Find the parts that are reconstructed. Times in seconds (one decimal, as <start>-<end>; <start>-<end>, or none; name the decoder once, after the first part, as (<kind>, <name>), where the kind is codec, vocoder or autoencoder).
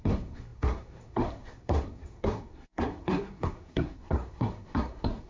0.0-5.3 (codec, SNAC)